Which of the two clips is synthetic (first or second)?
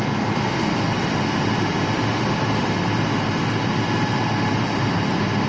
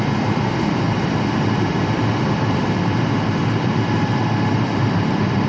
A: second